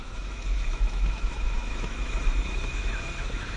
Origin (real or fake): fake